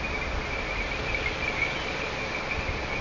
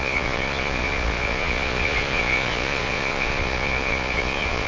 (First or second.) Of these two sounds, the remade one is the second